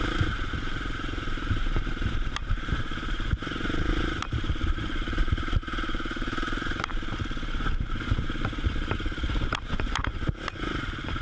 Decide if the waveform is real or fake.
fake